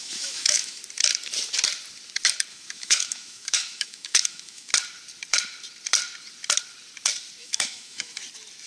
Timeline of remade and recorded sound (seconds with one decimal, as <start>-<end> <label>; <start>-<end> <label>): 0.0-0.8 remade; 0.8-2.5 recorded; 2.5-4.7 remade; 4.7-7.4 recorded; 7.4-8.2 remade; 8.2-8.7 recorded